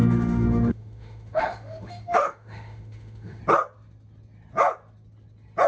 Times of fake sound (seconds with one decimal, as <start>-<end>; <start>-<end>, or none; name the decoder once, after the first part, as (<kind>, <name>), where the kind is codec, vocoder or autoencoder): 0.0-3.4 (autoencoder, DAC-VAE)